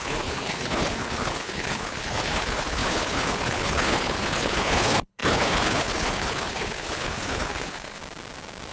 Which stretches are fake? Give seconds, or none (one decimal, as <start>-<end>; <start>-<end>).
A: 0.0-8.0